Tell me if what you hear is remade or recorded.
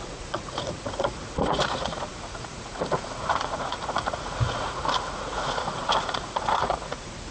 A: remade